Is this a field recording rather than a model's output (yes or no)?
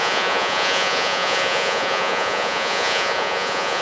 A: no